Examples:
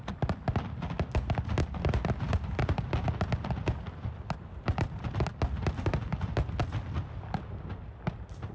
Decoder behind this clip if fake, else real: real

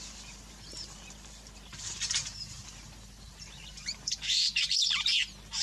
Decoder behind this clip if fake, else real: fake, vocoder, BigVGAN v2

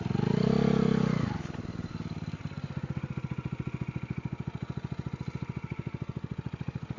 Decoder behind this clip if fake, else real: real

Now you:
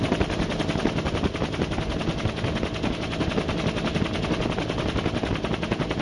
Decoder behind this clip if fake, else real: real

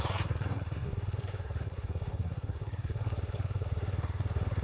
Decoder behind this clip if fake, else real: fake, codec, SNAC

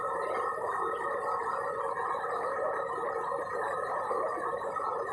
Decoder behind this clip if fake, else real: real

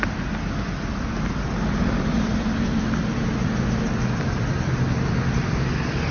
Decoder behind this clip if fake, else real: fake, vocoder, BigVGAN v2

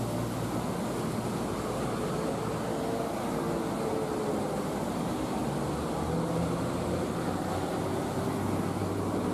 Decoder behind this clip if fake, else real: real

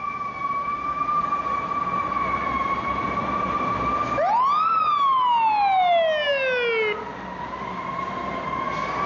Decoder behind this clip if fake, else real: real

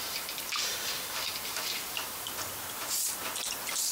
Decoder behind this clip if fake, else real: fake, vocoder, BigVGAN v2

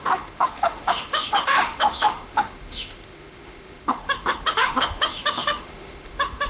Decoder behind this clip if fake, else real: fake, autoencoder, DAC-VAE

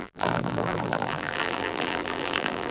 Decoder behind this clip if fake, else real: fake, vocoder, BigVGAN v2